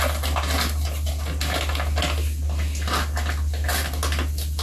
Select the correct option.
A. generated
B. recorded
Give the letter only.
B